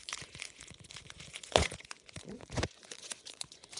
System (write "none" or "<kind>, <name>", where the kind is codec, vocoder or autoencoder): vocoder, Vocos